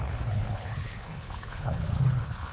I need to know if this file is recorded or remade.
remade